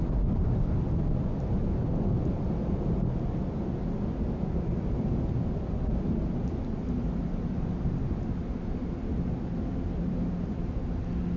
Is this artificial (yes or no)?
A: no